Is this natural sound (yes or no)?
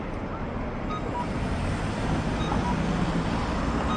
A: yes